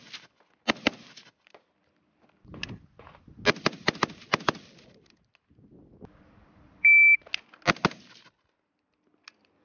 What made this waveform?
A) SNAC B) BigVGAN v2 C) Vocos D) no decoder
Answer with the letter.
D